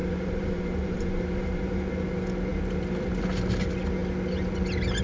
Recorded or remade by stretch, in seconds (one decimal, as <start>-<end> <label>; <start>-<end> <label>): 0.0-1.9 remade; 1.9-5.0 recorded